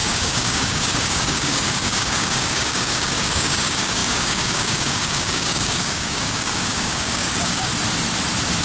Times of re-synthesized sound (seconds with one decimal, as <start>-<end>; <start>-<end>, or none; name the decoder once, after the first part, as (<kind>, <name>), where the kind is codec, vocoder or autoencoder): 0.0-7.7 (codec, DAC)